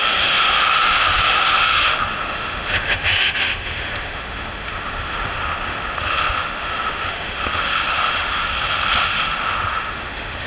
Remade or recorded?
remade